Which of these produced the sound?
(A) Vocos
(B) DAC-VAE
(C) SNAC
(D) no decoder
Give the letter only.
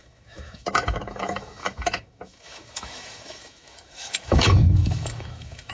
B